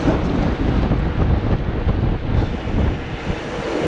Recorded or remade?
recorded